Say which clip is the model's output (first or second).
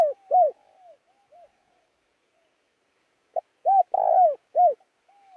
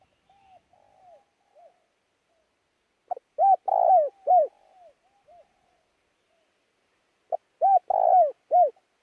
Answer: first